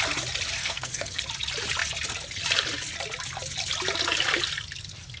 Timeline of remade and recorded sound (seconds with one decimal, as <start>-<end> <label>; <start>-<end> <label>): 0.0-0.6 recorded; 0.6-1.2 remade; 1.2-5.2 recorded